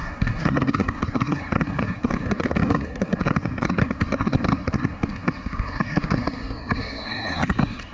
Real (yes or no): no